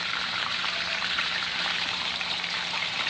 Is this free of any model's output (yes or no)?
no